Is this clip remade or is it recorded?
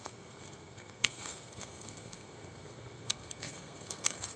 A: remade